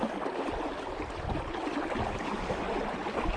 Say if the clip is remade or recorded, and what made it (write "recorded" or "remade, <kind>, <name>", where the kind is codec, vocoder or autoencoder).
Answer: recorded